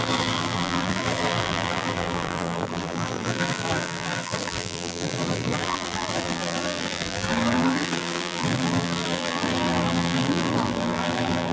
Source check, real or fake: fake